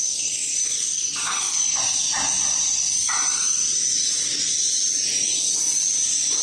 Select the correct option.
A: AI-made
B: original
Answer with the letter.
B